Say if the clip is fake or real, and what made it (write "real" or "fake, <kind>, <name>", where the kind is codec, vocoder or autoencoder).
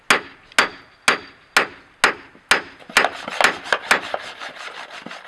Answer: real